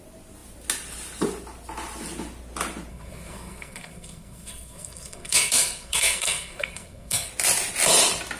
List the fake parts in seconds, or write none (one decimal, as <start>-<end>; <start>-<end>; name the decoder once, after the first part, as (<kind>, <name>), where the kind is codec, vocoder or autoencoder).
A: 2.9-7.3 (codec, SNAC)